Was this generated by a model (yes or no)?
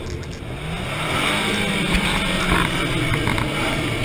no